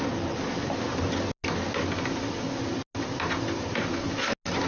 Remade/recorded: recorded